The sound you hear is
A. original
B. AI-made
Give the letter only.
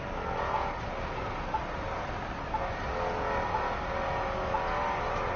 A